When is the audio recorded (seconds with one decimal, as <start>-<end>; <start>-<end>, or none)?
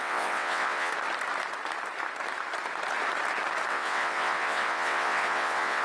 0.9-3.7